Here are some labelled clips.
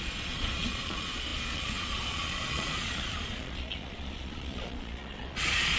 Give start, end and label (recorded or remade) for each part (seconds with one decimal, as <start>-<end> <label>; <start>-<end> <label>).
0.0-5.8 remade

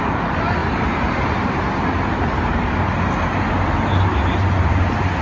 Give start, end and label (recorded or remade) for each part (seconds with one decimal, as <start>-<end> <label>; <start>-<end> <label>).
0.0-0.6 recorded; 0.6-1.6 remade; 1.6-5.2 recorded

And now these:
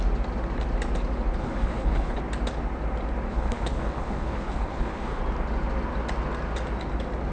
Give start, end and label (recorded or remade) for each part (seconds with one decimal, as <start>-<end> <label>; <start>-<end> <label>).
0.0-1.4 recorded; 1.4-2.2 remade; 2.2-3.3 recorded; 3.3-5.2 remade; 5.2-7.3 recorded

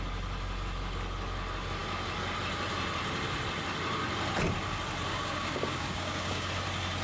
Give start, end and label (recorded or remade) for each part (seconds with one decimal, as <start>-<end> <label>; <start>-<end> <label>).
0.0-5.1 recorded; 5.1-6.5 remade; 6.5-7.0 recorded

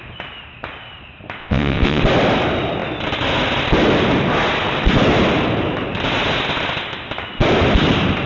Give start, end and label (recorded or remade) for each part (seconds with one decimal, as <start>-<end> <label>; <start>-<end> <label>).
0.0-1.4 recorded; 1.4-2.0 remade; 2.0-8.3 recorded

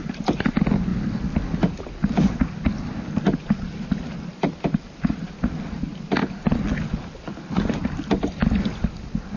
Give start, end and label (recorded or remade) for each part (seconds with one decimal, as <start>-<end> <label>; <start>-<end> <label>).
0.0-9.4 recorded

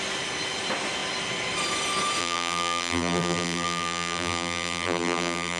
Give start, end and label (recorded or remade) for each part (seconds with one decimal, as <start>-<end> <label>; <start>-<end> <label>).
0.0-2.2 recorded; 2.2-5.6 remade

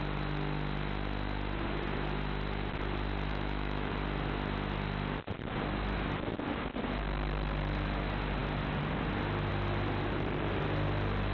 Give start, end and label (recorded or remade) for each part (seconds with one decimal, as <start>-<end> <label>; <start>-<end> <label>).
0.0-3.3 recorded; 3.3-3.9 remade; 3.9-11.3 recorded